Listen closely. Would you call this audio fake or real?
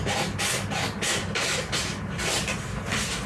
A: real